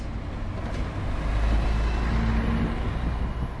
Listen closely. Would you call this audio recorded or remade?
recorded